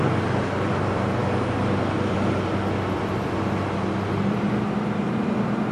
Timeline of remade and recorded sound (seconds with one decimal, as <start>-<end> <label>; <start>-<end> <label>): 0.0-1.2 recorded; 1.2-4.6 remade; 4.6-5.7 recorded